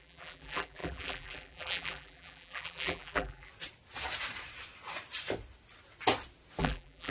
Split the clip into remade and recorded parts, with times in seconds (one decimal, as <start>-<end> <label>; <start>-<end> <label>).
0.0-3.5 remade; 3.5-6.6 recorded; 6.6-7.1 remade